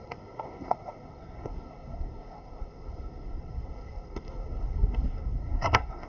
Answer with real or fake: fake